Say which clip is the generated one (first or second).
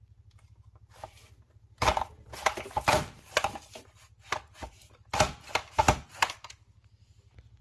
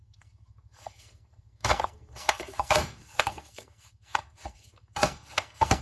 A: second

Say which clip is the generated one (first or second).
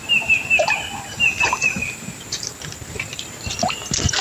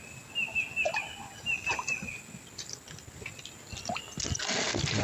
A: first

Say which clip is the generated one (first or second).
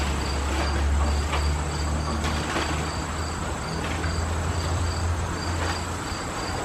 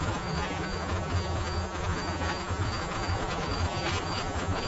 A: second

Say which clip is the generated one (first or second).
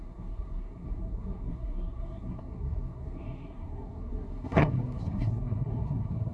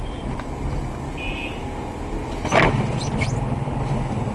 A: first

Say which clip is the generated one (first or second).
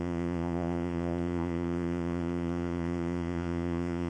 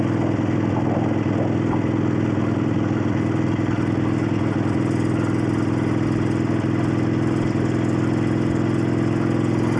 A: first